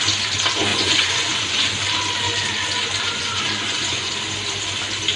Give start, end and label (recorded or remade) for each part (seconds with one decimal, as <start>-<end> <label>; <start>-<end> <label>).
0.0-0.7 recorded; 0.7-1.7 remade; 1.7-3.2 recorded; 3.2-4.1 remade; 4.1-5.2 recorded